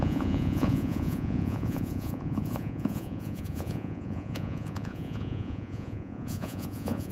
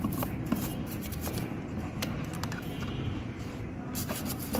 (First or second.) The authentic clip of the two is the second